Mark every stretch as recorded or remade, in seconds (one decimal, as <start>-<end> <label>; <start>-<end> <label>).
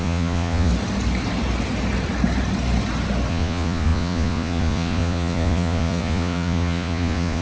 0.0-0.7 remade; 0.7-3.3 recorded; 3.3-7.4 remade